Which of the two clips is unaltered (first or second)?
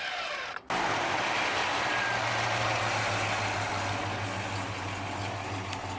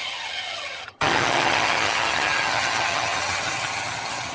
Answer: first